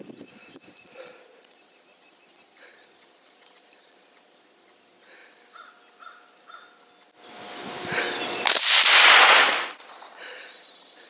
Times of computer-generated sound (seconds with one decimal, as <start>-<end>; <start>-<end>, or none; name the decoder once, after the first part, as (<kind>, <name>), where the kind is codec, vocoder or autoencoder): 0.0-5.2 (vocoder, Vocos); 9.1-11.1